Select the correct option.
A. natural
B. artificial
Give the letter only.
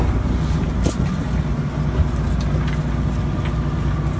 A